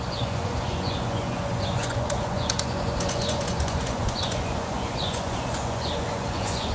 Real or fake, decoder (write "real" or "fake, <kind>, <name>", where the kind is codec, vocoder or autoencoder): fake, vocoder, Vocos